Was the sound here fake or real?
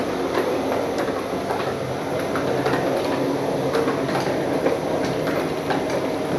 real